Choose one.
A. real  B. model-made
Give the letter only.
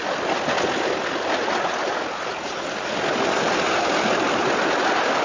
A